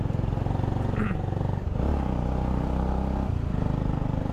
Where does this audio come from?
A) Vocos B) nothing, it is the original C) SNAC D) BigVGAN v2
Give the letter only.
B